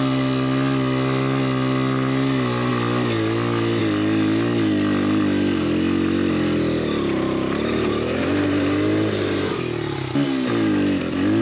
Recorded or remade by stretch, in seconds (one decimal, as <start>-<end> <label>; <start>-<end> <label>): 0.0-11.4 recorded